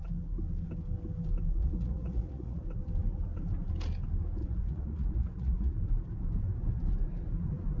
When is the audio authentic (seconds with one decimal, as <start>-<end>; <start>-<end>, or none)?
0.0-1.6; 2.6-4.4; 5.7-7.8